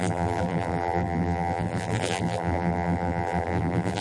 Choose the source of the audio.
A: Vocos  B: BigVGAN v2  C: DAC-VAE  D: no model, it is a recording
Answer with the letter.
B